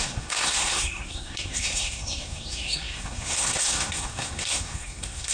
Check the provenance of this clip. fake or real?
fake